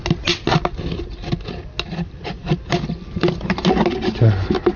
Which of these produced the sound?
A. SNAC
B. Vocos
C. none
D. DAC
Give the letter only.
C